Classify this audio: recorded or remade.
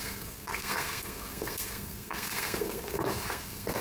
remade